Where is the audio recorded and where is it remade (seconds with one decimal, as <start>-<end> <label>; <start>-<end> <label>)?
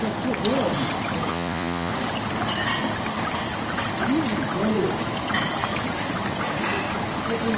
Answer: 0.0-1.3 recorded; 1.3-1.9 remade; 1.9-7.6 recorded